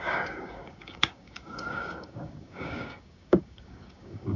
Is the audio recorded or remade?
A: remade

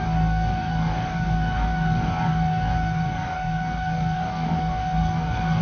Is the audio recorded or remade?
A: remade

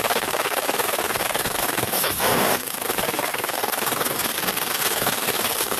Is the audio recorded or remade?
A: remade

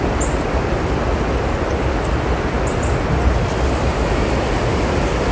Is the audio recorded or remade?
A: recorded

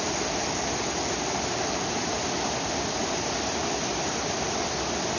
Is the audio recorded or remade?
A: recorded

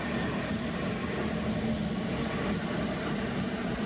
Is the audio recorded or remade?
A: recorded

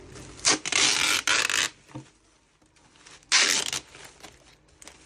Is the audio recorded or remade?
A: recorded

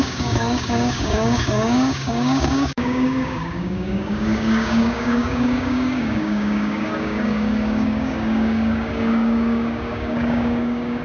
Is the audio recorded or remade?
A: remade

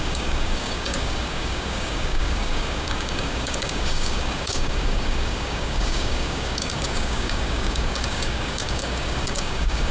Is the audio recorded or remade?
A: remade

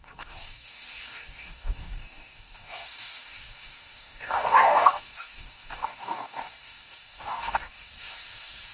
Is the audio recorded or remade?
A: remade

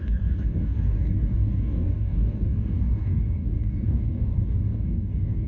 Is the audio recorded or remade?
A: remade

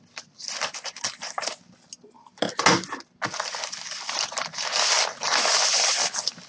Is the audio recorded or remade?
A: recorded